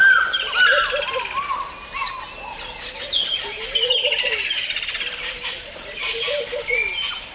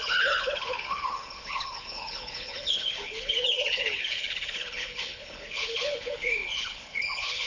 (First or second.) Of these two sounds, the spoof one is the second